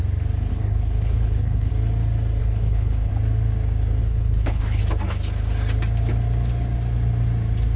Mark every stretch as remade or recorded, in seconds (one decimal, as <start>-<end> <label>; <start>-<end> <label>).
0.0-0.5 recorded; 0.5-1.7 remade; 1.7-2.4 recorded; 2.4-3.1 remade; 3.1-4.0 recorded; 4.0-4.8 remade; 4.8-7.8 recorded